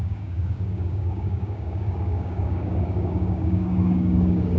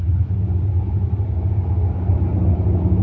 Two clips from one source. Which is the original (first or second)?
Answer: second